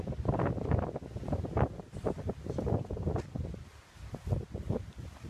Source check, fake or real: real